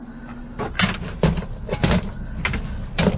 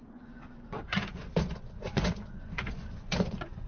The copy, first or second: second